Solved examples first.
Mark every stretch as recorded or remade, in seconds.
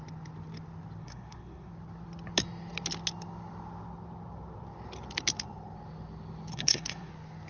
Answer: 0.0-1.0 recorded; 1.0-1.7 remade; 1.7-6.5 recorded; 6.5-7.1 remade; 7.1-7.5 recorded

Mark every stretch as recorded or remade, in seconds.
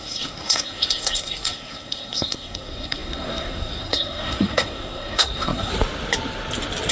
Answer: 0.0-5.7 remade; 5.7-6.9 recorded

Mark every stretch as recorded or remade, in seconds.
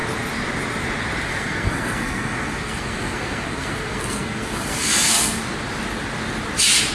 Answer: 0.0-1.3 recorded; 1.3-5.4 remade; 5.4-6.9 recorded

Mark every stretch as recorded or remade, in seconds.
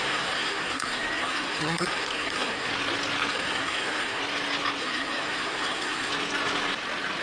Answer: 0.0-2.7 remade; 2.7-3.3 recorded; 3.3-4.2 remade; 4.2-4.8 recorded; 4.8-6.1 remade; 6.1-7.2 recorded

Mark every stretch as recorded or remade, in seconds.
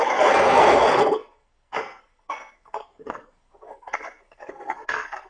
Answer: 0.0-5.3 remade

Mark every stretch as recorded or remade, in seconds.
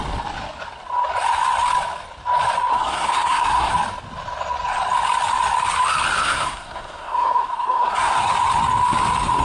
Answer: 0.0-2.7 recorded; 2.7-3.7 remade; 3.7-6.2 recorded; 6.2-8.3 remade; 8.3-9.4 recorded